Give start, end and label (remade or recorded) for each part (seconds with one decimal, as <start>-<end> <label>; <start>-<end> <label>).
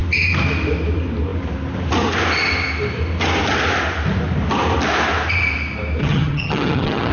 0.0-6.0 recorded; 6.0-7.1 remade